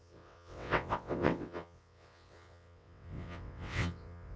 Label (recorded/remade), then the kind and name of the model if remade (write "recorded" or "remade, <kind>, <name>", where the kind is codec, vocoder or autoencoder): remade, vocoder, WaveNeXt